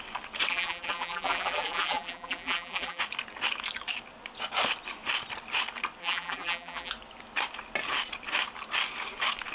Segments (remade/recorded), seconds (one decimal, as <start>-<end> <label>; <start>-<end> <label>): 0.0-0.5 recorded; 0.5-3.0 remade; 3.0-6.0 recorded; 6.0-6.9 remade; 6.9-9.5 recorded